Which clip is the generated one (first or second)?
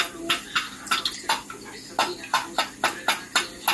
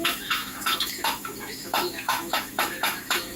second